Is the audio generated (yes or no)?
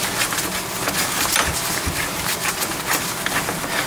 no